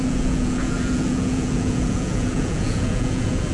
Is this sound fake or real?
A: fake